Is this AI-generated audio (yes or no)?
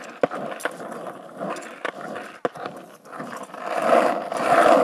no